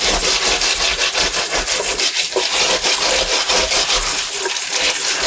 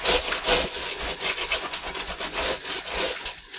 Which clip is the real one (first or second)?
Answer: first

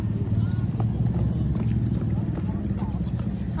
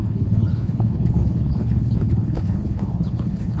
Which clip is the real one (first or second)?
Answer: first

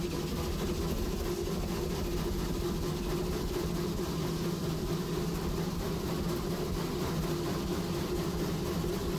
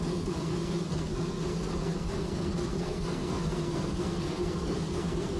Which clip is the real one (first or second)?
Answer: first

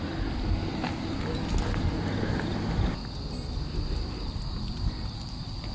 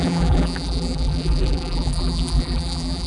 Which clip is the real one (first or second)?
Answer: first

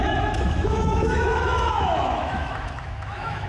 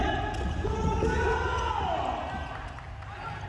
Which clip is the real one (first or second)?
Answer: second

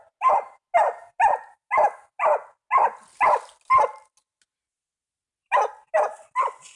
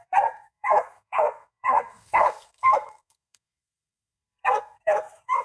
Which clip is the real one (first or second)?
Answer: first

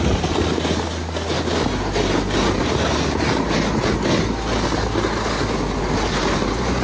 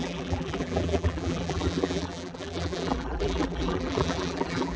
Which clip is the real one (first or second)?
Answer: first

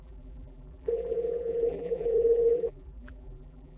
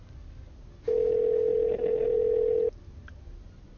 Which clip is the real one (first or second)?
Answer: second